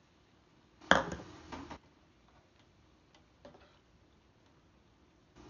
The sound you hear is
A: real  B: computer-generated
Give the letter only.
A